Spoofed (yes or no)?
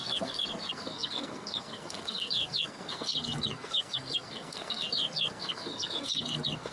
yes